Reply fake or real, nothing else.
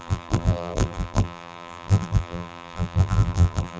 fake